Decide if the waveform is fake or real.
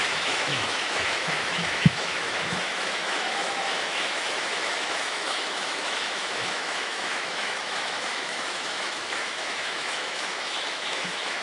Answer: fake